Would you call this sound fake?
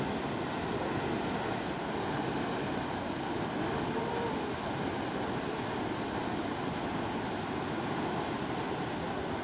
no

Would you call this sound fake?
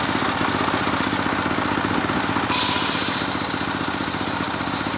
no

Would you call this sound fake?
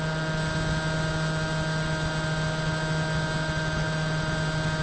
no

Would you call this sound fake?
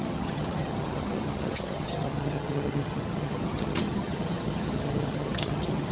yes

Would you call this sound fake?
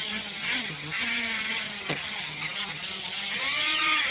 yes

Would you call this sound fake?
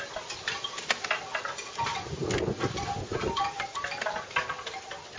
no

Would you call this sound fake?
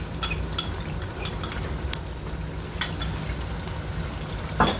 no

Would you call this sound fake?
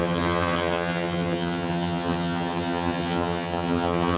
yes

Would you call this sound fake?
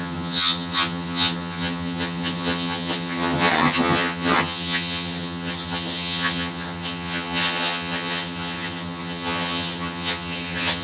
yes